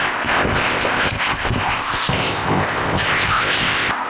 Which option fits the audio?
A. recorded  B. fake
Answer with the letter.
B